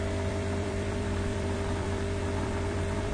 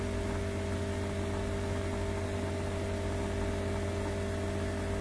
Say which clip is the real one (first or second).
second